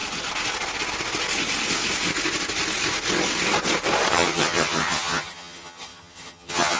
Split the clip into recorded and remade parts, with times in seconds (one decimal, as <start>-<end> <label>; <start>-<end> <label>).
0.0-4.1 recorded; 4.1-6.8 remade